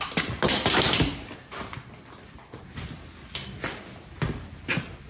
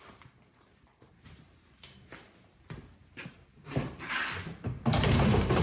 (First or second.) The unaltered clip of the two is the first